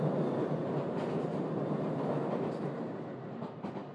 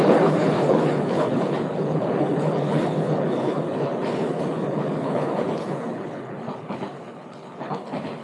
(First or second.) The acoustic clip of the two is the first